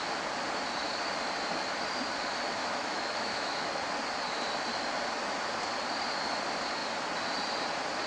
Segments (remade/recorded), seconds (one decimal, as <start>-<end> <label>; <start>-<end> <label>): 0.0-2.6 recorded; 2.6-3.7 remade; 3.7-8.1 recorded